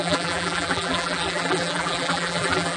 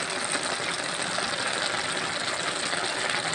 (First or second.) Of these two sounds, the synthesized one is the first